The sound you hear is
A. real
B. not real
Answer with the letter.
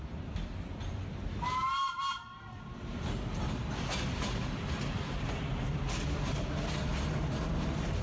A